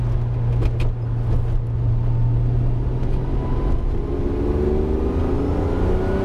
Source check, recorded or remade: recorded